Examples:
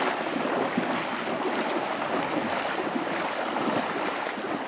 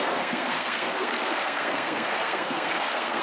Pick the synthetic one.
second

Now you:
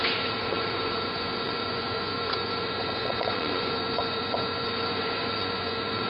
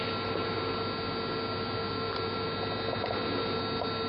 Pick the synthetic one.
first